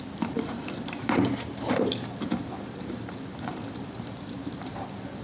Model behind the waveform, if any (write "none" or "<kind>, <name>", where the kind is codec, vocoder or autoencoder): vocoder, BigVGAN v2